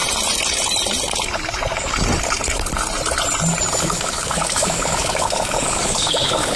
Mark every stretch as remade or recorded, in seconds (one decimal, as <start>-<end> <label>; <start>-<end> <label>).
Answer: 0.0-3.8 recorded; 3.8-6.6 remade

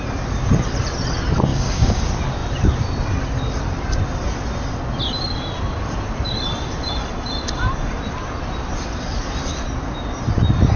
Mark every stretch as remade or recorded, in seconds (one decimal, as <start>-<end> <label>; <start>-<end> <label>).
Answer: 0.0-1.5 recorded; 1.5-2.0 remade; 2.0-10.8 recorded